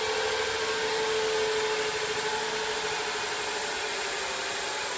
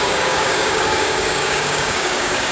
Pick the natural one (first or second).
first